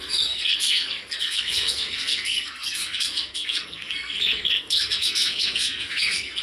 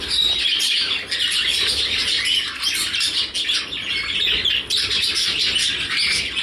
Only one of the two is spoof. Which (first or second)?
first